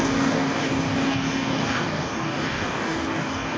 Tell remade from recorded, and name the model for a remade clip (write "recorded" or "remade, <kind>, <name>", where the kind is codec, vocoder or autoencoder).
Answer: remade, codec, DAC